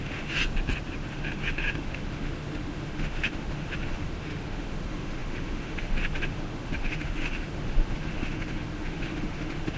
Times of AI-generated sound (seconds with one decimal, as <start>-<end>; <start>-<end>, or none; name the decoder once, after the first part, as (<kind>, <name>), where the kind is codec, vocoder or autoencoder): 0.0-0.4 (autoencoder, DAC-VAE); 1.1-9.8